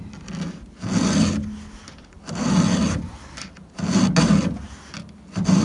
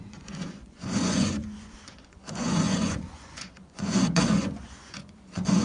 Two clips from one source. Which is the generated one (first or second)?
second